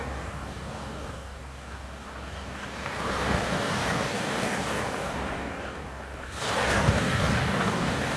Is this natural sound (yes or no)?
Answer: no